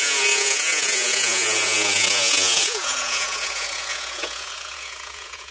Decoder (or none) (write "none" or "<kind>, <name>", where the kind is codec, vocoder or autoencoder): vocoder, Vocos